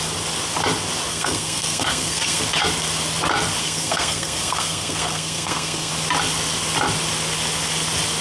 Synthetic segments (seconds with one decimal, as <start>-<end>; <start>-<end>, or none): 1.1-2.4; 3.6-5.9